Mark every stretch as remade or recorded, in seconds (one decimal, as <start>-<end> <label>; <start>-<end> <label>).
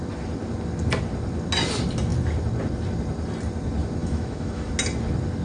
0.0-4.0 recorded; 4.0-4.7 remade; 4.7-5.4 recorded